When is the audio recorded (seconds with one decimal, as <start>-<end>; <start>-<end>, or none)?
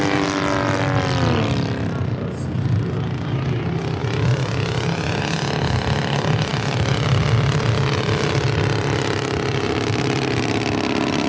0.0-11.3